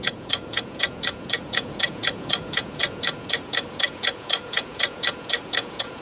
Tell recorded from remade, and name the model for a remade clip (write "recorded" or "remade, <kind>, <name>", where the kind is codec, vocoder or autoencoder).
remade, vocoder, Vocos